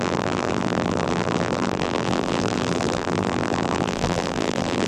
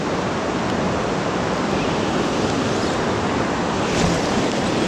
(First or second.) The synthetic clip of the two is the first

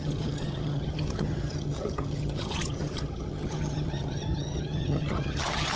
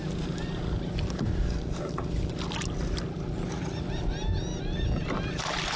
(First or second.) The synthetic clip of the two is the first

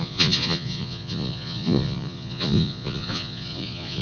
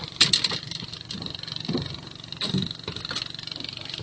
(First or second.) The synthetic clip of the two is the first